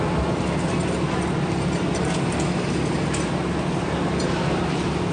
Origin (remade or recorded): recorded